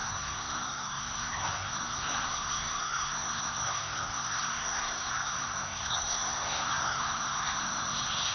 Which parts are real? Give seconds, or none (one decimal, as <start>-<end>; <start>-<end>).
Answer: none